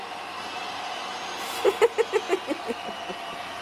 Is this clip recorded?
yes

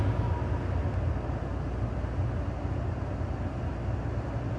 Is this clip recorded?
yes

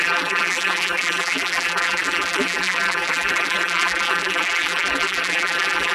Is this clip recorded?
no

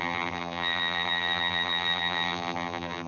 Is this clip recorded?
no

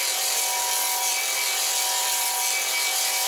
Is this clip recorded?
no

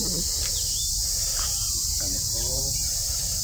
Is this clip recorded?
no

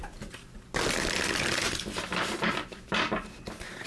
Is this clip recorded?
yes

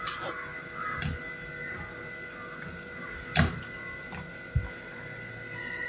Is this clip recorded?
yes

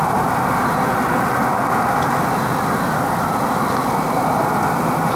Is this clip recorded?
yes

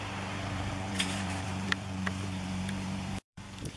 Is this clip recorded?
no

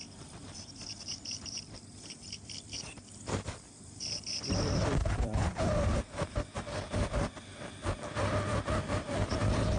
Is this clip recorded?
no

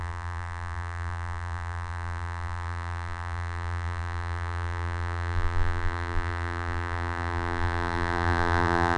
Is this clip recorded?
no